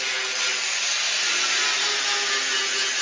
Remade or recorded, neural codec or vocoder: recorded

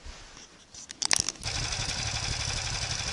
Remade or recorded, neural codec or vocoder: recorded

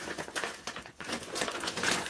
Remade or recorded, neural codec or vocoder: remade, vocoder, Vocos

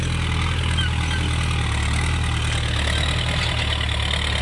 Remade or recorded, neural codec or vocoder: recorded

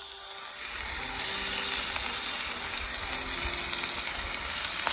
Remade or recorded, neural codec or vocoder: recorded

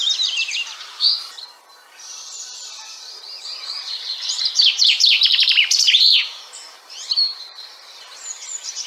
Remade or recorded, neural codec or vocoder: remade, vocoder, BigVGAN v2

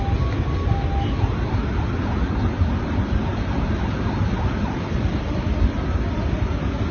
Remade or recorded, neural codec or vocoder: recorded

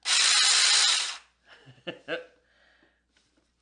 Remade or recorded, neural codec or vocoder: recorded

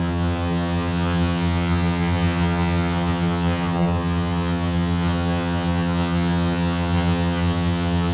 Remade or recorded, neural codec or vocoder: remade, vocoder, HiFi-GAN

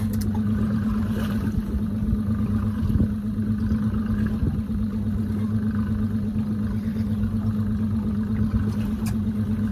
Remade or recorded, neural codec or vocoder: recorded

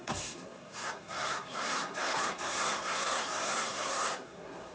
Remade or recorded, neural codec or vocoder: remade, codec, SNAC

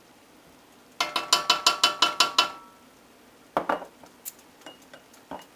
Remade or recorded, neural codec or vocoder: recorded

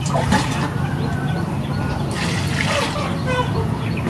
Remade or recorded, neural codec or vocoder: recorded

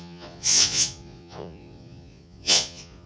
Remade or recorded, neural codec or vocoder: remade, vocoder, Vocos